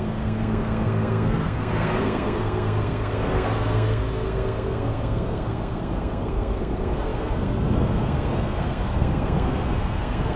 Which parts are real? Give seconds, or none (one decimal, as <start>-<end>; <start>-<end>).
none